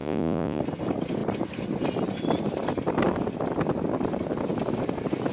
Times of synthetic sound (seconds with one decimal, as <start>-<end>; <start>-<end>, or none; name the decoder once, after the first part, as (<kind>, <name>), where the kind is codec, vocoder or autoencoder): 0.0-0.6 (vocoder, Vocos)

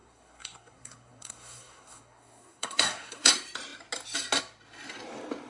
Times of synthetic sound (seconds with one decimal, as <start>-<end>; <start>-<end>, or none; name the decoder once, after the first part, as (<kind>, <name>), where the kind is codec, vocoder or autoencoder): 0.0-3.3 (codec, SNAC)

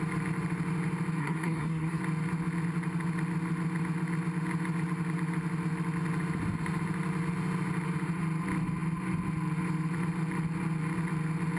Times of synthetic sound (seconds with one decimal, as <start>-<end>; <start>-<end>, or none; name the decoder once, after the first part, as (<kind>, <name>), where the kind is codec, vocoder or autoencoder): 1.2-2.0 (codec, SNAC)

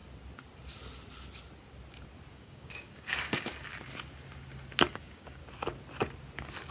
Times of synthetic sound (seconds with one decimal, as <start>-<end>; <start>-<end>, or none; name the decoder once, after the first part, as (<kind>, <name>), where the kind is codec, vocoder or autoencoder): 2.3-3.5 (codec, DAC); 4.9-5.4

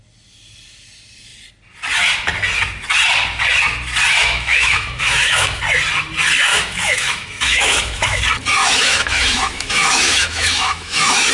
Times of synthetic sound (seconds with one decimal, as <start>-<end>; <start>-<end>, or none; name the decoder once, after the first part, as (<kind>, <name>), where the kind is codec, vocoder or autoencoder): 4.2-5.6 (autoencoder, DAC-VAE); 6.5-8.2; 8.6-11.3

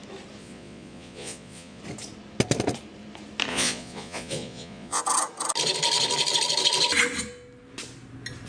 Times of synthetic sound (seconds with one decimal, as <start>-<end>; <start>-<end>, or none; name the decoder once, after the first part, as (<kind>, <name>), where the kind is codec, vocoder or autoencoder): 0.4-1.8 (vocoder, Vocos); 3.5-5.0

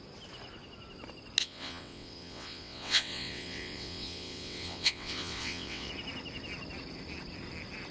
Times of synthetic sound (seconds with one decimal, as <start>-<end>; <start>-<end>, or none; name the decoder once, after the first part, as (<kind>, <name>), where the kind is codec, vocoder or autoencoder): 1.4-5.9 (vocoder, WaveNeXt)